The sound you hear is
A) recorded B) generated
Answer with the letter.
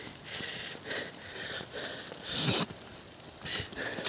A